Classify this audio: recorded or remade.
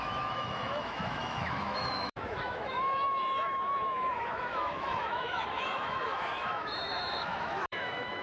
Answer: remade